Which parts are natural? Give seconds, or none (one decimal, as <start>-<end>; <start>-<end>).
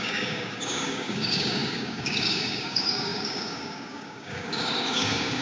none